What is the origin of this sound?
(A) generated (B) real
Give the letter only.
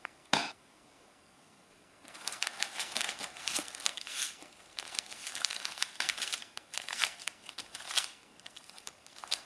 A